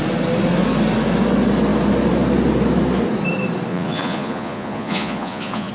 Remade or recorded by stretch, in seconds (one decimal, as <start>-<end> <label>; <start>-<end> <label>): 0.0-3.7 recorded; 3.7-5.7 remade